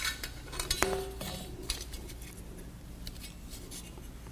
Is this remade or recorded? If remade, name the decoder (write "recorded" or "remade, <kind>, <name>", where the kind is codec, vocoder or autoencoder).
recorded